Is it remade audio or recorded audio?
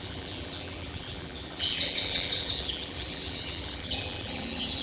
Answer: remade